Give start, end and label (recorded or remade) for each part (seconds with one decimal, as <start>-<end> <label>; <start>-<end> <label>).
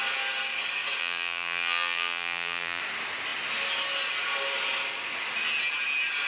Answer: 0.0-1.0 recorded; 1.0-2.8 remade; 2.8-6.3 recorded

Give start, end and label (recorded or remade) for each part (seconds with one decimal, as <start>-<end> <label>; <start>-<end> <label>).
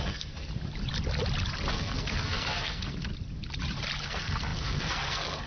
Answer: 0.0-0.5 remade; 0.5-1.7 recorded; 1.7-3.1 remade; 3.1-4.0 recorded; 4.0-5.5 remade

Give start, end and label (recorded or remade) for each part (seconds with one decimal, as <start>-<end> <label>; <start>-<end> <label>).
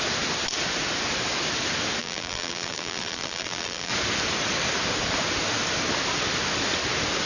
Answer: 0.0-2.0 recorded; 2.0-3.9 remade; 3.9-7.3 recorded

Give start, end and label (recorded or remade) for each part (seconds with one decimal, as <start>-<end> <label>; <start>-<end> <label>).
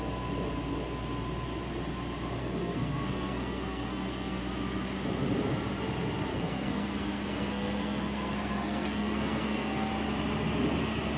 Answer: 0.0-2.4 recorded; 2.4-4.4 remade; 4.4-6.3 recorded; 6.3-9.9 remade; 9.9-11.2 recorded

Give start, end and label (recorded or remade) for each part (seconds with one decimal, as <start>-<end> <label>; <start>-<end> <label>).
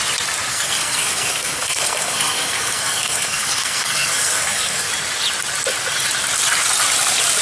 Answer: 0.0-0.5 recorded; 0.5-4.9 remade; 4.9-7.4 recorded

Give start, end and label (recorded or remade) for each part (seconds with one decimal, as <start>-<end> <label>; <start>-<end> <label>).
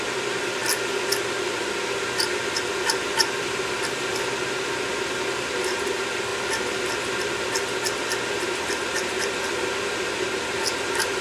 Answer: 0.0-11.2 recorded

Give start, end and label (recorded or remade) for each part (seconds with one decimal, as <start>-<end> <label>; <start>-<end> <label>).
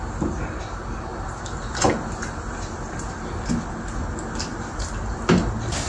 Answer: 0.0-1.1 recorded; 1.1-3.3 remade; 3.3-4.5 recorded; 4.5-5.9 remade